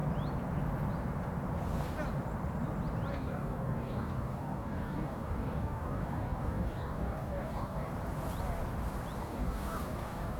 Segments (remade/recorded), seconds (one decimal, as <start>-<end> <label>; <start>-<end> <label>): 0.0-3.1 recorded; 3.1-7.9 remade; 7.9-9.2 recorded; 9.2-10.4 remade